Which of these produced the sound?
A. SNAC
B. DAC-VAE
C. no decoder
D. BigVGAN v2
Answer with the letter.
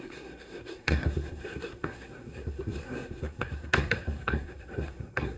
A